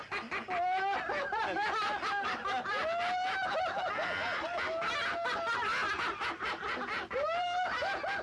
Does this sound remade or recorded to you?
recorded